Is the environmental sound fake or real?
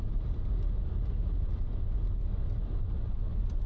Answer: real